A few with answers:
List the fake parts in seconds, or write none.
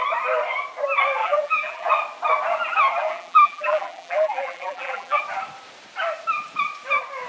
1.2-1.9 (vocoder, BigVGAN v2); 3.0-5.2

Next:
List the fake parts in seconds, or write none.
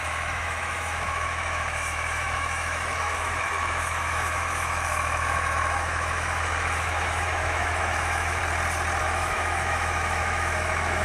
0.0-8.4 (autoencoder, DAC-VAE); 9.0-11.0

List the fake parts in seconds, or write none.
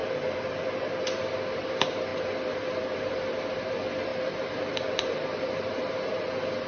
0.0-1.7 (vocoder, BigVGAN v2); 2.1-3.1; 4.1-5.9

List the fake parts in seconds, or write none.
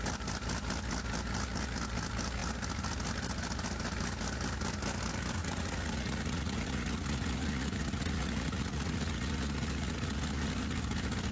5.4-10.5 (vocoder, Vocos)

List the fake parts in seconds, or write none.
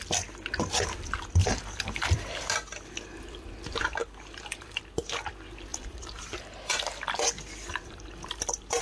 1.4-2.5 (vocoder, BigVGAN v2); 4.0-4.8; 5.7-8.8